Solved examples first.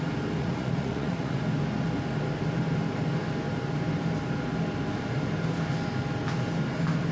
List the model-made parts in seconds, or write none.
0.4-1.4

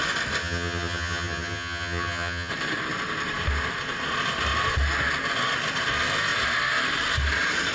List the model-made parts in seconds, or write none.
0.4-2.5

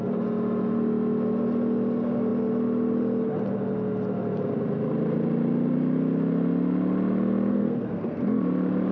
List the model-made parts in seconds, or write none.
7.5-8.2

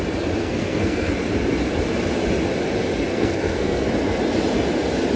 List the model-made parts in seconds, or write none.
0.4-1.1; 3.1-3.9

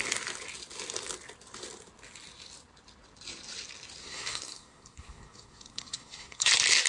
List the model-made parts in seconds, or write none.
4.0-6.5